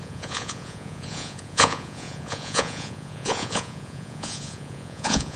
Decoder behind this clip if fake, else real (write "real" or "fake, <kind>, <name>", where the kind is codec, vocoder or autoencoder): fake, vocoder, Vocos